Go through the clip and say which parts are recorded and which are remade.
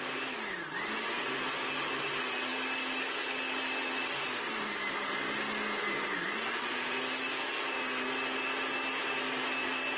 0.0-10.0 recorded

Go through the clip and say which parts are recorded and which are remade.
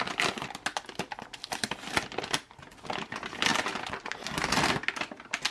0.0-5.5 recorded